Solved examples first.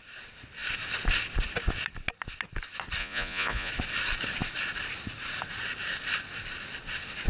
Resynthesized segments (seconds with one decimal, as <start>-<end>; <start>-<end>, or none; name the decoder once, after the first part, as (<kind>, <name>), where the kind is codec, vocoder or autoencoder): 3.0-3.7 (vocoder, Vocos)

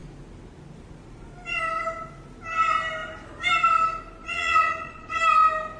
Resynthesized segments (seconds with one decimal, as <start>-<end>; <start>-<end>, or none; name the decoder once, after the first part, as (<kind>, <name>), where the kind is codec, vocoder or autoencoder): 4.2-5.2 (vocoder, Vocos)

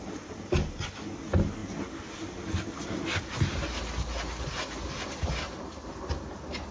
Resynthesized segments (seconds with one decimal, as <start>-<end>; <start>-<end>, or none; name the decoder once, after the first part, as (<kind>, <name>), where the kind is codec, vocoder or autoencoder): none

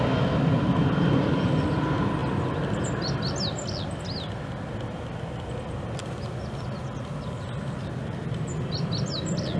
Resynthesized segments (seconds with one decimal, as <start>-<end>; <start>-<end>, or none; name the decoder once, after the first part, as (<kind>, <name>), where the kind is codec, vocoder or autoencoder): none

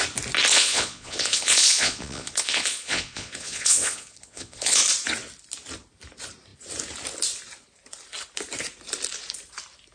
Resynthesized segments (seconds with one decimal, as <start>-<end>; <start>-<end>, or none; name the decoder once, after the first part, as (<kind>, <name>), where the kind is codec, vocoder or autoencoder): 0.5-4.8 (vocoder, Vocos)

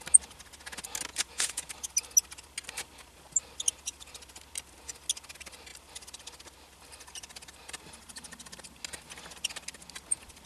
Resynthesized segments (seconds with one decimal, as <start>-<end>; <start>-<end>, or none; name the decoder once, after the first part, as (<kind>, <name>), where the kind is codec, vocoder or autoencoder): 1.1-1.7 (vocoder, Vocos)